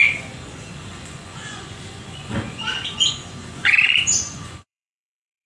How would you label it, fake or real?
fake